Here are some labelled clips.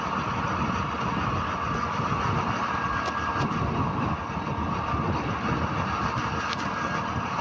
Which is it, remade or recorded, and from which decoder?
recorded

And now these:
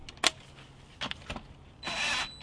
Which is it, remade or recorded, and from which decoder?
recorded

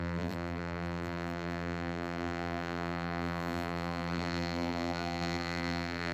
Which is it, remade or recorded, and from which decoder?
remade, vocoder, BigVGAN v2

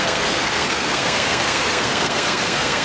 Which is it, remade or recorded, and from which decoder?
remade, codec, SNAC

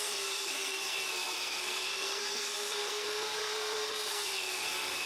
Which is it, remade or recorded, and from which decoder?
remade, codec, SNAC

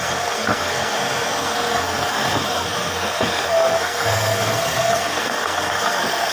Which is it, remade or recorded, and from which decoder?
remade, codec, SNAC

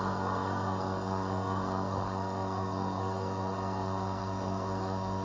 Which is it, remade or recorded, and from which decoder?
remade, codec, SNAC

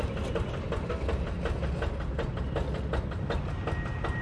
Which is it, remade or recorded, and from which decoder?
recorded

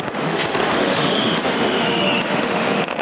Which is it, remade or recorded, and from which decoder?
remade, autoencoder, DAC-VAE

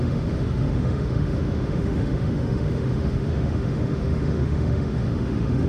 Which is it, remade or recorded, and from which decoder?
remade, autoencoder, DAC-VAE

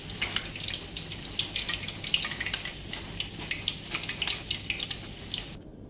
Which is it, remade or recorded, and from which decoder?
recorded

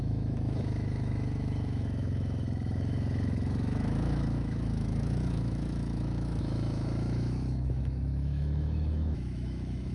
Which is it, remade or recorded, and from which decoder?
remade, autoencoder, DAC-VAE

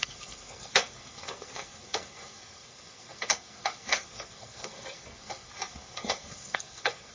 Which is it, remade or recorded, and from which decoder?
remade, codec, SNAC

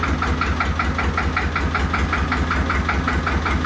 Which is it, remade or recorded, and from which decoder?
recorded